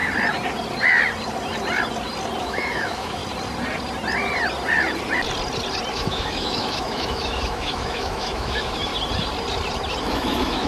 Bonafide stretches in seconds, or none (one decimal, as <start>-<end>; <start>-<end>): 0.0-2.4; 3.2-5.9; 8.9-10.0